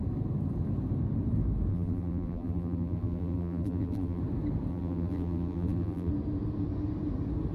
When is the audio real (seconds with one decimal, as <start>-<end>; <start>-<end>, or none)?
0.0-1.7; 4.2-4.7; 6.1-7.5